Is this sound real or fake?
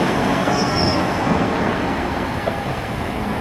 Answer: fake